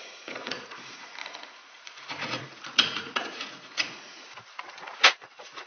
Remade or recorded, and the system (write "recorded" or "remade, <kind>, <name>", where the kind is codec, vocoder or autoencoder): remade, vocoder, Vocos